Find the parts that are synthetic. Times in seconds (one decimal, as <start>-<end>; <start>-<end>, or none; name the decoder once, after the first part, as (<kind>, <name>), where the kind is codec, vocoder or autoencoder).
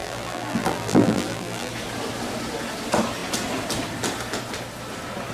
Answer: 0.0-1.7 (vocoder, BigVGAN v2)